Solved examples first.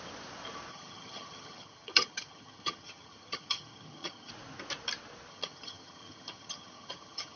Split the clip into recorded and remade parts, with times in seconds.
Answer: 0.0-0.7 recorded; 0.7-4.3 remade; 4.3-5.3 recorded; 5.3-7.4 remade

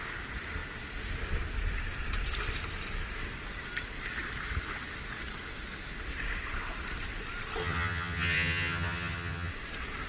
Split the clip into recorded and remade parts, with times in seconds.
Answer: 0.0-7.6 recorded; 7.6-9.5 remade; 9.5-10.1 recorded